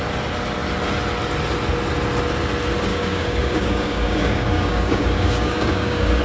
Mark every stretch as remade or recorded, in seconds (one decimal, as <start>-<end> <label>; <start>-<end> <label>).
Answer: 0.0-2.9 recorded; 2.9-6.2 remade